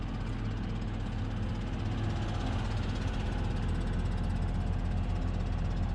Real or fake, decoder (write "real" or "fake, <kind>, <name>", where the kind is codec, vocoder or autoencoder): real